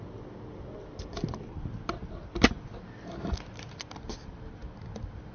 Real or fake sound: real